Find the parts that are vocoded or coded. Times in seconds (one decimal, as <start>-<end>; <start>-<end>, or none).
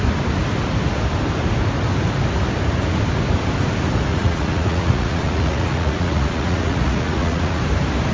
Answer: 4.1-7.6